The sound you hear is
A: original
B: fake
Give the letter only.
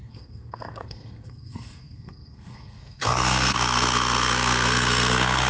B